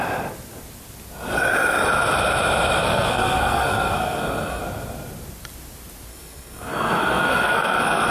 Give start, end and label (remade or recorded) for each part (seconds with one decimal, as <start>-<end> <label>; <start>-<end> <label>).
0.0-2.8 recorded; 2.8-4.6 remade; 4.6-6.1 recorded; 6.1-8.1 remade